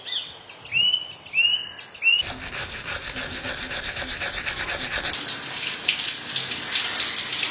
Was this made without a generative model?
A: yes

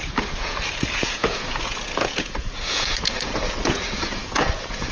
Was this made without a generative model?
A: no